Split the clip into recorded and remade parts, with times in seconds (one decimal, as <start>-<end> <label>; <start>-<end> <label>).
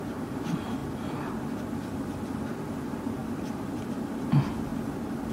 0.0-4.7 remade; 4.7-5.3 recorded